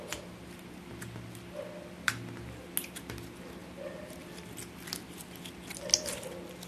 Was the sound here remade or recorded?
recorded